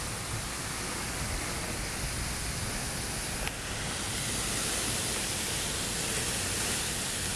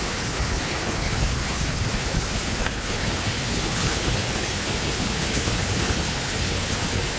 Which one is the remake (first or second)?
second